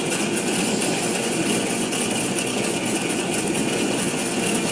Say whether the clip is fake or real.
fake